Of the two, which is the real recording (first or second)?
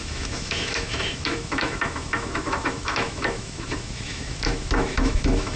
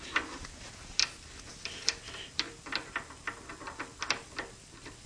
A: second